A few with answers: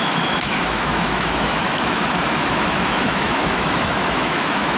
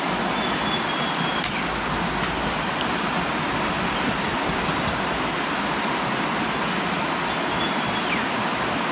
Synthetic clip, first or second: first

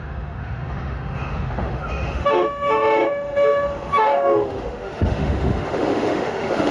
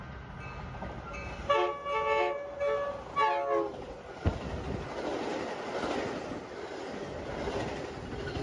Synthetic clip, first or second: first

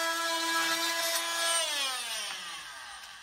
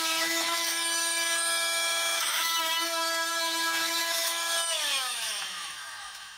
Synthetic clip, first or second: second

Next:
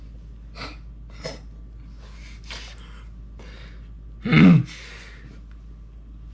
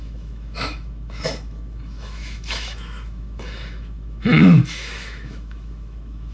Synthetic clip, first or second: second